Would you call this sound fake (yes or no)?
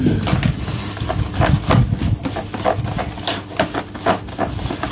no